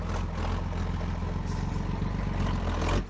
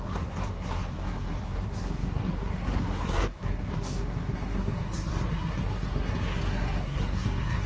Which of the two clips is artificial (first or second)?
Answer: second